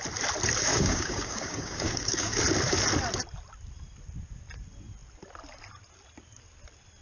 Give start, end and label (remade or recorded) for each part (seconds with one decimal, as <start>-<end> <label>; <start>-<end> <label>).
0.0-0.7 recorded; 0.7-2.4 remade; 2.4-7.0 recorded